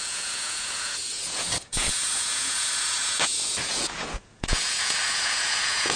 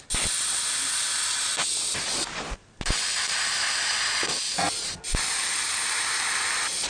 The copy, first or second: first